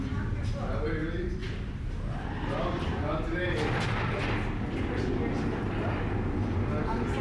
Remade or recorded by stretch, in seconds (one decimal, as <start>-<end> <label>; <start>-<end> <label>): 0.0-7.2 recorded